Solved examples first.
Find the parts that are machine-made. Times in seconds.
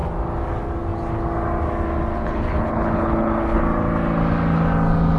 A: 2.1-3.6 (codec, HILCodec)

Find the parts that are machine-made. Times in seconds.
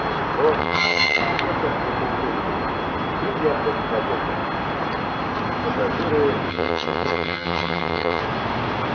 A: 0.6-1.2 (vocoder, HiFi-GAN); 6.5-8.2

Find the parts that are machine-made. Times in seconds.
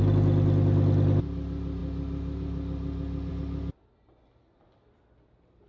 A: none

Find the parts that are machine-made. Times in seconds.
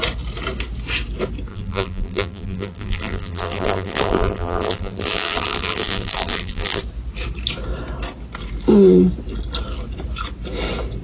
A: 1.5-6.8 (vocoder, BigVGAN v2)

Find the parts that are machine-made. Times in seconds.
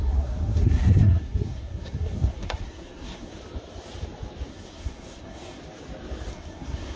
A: 0.0-3.3 (codec, SNAC); 4.5-5.6; 6.3-7.0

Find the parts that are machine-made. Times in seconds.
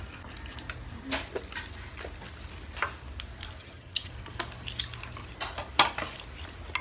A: 3.6-4.1 (vocoder, HiFi-GAN)